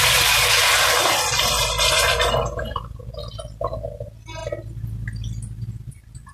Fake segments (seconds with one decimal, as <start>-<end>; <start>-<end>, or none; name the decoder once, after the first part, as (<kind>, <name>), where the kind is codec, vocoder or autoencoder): 0.6-3.0 (vocoder, BigVGAN v2)